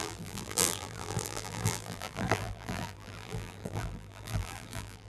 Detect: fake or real fake